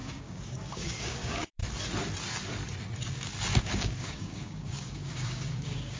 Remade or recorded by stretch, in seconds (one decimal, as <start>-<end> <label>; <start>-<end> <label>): 0.0-1.6 remade; 1.6-3.6 recorded; 3.6-6.0 remade